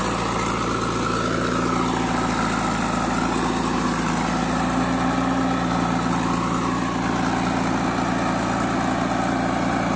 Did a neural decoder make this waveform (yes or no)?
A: no